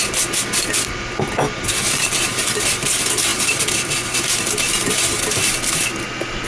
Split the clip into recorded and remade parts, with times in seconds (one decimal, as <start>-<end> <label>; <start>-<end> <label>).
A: 0.0-6.5 recorded